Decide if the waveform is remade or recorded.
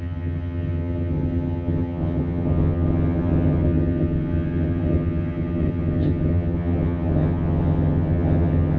remade